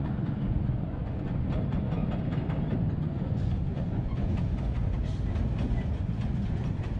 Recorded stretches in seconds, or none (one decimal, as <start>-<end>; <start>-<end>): 2.0-3.0; 5.0-5.6